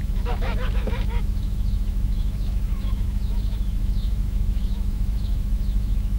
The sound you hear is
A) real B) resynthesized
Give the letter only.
B